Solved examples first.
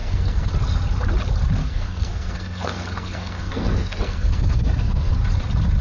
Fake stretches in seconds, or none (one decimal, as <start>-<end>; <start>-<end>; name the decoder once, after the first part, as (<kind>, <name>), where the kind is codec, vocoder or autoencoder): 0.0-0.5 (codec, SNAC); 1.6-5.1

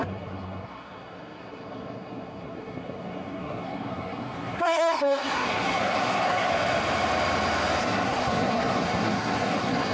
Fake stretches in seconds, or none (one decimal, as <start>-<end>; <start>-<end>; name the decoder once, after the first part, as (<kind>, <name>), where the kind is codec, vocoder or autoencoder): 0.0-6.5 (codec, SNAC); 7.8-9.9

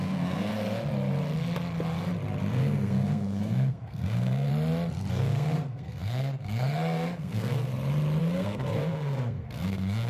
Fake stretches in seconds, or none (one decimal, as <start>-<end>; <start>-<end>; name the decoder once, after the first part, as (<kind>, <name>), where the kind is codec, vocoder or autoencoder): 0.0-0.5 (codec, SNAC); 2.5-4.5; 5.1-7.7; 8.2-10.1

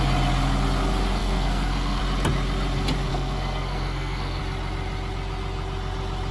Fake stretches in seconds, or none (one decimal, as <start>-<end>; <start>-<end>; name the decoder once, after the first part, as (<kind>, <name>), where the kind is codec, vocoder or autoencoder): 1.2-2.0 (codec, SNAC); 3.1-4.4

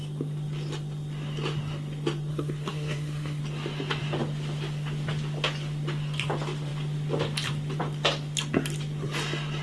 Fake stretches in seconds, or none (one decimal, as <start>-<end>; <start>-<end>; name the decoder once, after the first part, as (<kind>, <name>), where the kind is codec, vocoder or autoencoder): 2.3-3.4 (codec, SNAC)